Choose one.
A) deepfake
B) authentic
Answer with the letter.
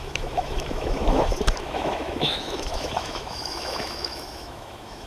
A